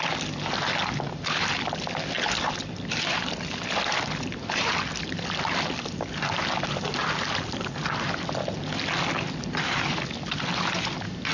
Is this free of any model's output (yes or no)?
yes